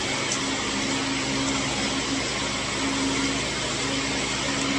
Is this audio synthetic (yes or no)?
no